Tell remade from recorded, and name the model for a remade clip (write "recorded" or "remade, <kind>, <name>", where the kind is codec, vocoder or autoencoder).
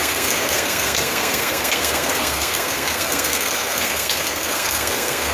remade, codec, SNAC